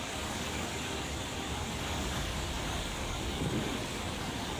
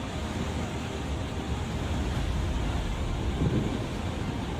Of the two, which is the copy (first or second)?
first